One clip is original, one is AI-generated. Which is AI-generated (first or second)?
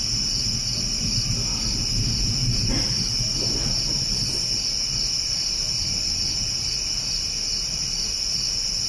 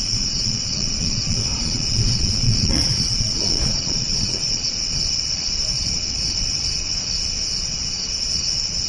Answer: second